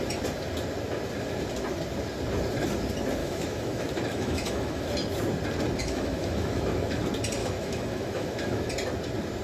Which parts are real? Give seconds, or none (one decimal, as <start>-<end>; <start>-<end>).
0.0-3.2; 4.9-5.8; 7.0-7.4; 8.7-9.4